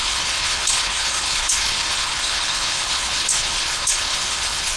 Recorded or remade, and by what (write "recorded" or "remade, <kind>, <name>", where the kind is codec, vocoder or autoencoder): remade, codec, HILCodec